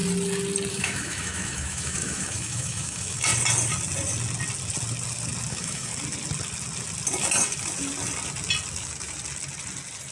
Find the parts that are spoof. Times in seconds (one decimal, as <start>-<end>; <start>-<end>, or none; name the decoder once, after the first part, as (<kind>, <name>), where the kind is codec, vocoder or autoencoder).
0.7-3.3 (autoencoder, DAC-VAE); 5.5-5.9